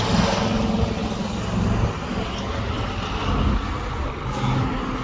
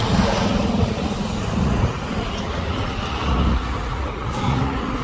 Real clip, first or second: first